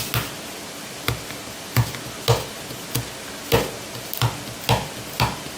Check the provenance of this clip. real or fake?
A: real